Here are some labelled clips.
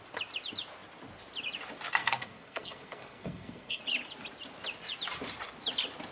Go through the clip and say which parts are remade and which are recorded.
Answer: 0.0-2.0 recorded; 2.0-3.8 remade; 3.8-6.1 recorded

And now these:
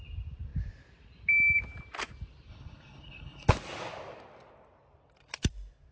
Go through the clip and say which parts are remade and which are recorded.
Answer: 0.0-2.5 recorded; 2.5-3.5 remade; 3.5-5.9 recorded

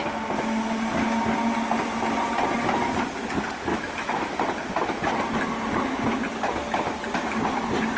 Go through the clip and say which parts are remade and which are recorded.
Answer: 0.0-3.7 recorded; 3.7-4.4 remade; 4.4-8.0 recorded

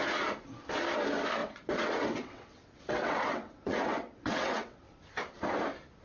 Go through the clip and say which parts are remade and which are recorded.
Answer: 0.0-1.4 recorded; 1.4-5.0 remade; 5.0-6.0 recorded